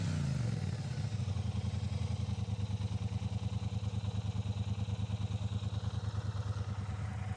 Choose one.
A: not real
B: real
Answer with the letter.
B